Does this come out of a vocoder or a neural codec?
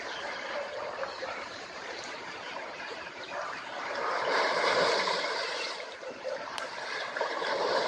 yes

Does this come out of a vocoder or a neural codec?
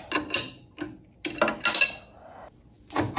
no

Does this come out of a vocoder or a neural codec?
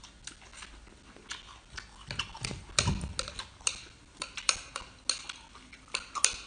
no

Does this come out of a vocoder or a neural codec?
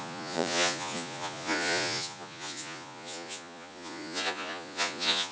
yes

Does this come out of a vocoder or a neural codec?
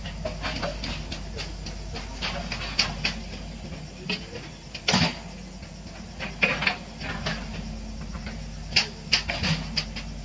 no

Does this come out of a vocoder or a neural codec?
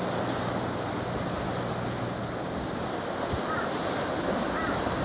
no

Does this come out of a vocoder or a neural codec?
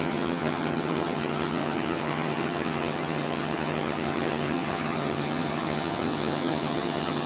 yes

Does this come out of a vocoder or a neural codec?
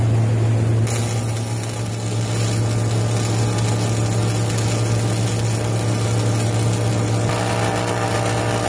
no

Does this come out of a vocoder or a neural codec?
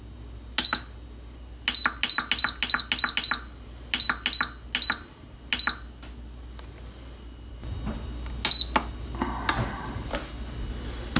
no